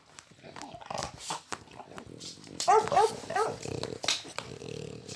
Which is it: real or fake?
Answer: real